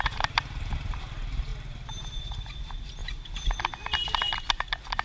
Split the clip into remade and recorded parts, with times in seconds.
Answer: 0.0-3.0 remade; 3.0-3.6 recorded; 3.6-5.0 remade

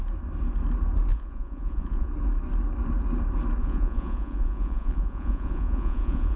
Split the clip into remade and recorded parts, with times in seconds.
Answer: 0.0-1.1 recorded; 1.1-2.1 remade; 2.1-3.6 recorded; 3.6-6.4 remade